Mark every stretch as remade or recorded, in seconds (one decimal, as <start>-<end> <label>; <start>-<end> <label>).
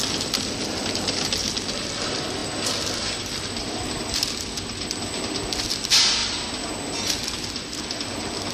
0.0-8.5 recorded